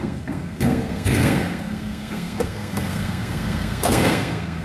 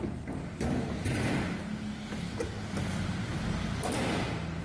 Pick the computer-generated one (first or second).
first